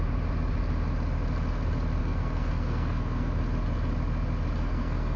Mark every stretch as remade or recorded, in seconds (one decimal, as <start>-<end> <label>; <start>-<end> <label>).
0.0-2.0 recorded; 2.0-3.3 remade; 3.3-4.6 recorded; 4.6-5.2 remade